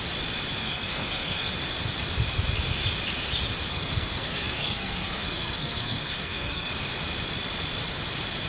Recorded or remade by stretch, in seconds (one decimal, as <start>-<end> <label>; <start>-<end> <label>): 0.0-0.6 recorded; 0.6-1.5 remade; 1.5-3.7 recorded; 3.7-6.7 remade; 6.7-8.5 recorded